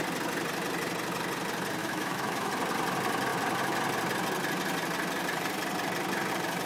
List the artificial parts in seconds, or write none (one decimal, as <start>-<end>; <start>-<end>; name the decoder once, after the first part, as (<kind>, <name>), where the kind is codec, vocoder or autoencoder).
1.8-2.5 (autoencoder, DAC-VAE)